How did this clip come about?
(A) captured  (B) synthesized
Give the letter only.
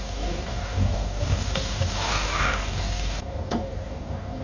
B